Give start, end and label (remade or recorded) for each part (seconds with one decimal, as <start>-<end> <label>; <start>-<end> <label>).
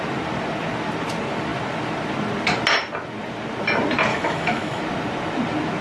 0.0-4.1 recorded; 4.1-4.8 remade; 4.8-5.8 recorded